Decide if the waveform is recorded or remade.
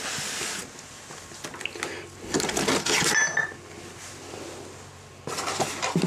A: recorded